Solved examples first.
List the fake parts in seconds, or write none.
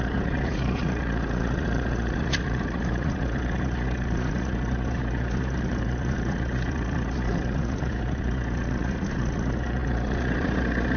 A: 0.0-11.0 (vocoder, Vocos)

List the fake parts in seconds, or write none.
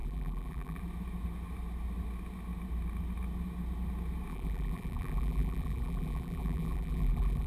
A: 0.0-0.8 (vocoder, BigVGAN v2); 4.3-7.5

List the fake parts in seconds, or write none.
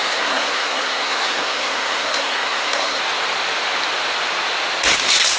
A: 0.0-3.0 (codec, SNAC)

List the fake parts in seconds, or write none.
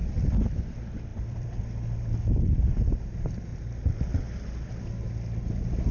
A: 0.0-0.6 (vocoder, BigVGAN v2); 1.1-1.6; 3.5-4.9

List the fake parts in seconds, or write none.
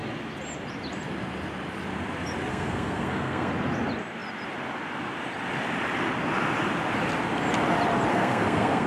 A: 2.5-3.5 (codec, SNAC); 8.1-8.9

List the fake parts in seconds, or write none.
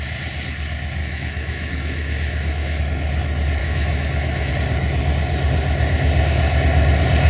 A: 1.0-2.8 (autoencoder, DAC-VAE); 3.6-4.5